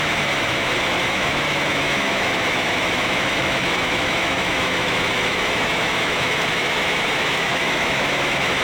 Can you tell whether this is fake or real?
fake